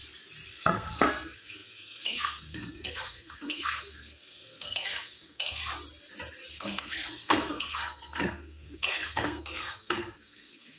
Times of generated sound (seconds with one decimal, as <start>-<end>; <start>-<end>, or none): 0.5-5.6; 6.5-10.8